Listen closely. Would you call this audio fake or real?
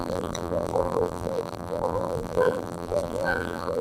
fake